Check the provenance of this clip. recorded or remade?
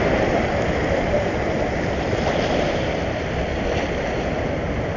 recorded